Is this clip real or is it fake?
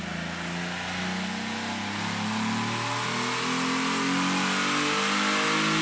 real